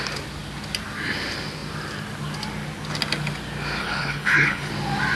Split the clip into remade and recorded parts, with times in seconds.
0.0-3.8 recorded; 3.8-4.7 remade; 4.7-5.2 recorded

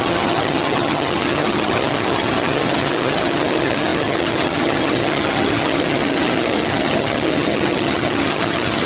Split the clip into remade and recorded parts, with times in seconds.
0.0-8.8 remade

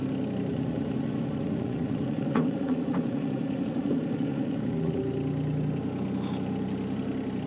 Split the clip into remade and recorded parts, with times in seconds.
0.0-0.5 recorded; 0.5-5.0 remade; 5.0-7.5 recorded

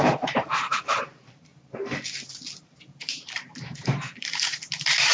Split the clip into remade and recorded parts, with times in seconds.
0.0-1.5 remade; 1.5-3.0 recorded; 3.0-5.1 remade

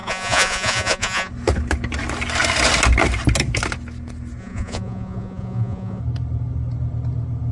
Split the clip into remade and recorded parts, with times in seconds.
0.0-1.3 remade; 1.3-4.4 recorded; 4.4-6.0 remade; 6.0-7.5 recorded

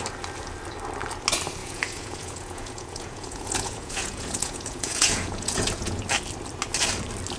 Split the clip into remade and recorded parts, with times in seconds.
0.0-1.6 recorded; 1.6-6.0 remade; 6.0-7.4 recorded